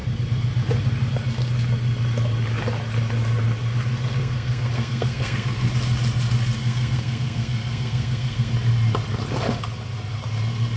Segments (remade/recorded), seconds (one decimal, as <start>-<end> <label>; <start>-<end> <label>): 0.0-4.2 recorded; 4.2-5.7 remade; 5.7-6.6 recorded; 6.6-8.5 remade; 8.5-10.8 recorded